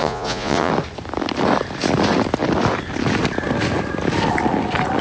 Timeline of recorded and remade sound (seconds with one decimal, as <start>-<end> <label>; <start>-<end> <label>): 0.0-0.7 remade; 0.7-5.0 recorded